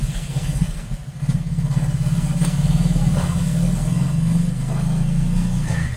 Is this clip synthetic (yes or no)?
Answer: yes